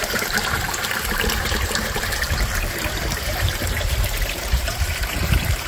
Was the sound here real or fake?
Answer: fake